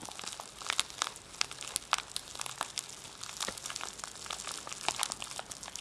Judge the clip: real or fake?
real